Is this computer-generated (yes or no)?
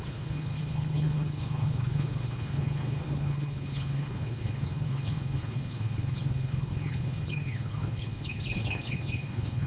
yes